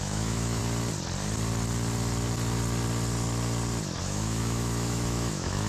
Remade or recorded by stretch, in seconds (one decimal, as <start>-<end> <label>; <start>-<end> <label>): 0.0-0.6 remade; 0.6-4.0 recorded; 4.0-5.7 remade